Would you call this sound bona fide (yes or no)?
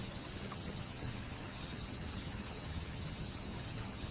no